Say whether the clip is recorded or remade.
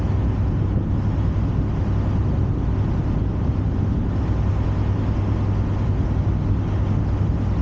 recorded